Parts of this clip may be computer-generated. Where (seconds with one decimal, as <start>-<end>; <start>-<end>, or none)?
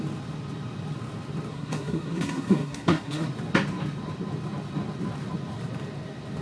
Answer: 1.5-3.3